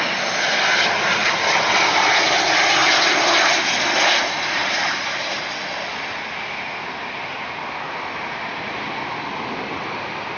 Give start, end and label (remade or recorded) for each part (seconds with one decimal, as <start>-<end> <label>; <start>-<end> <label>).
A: 0.0-4.6 recorded; 4.6-5.4 remade; 5.4-10.4 recorded